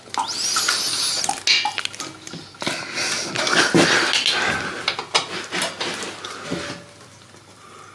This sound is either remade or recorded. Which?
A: recorded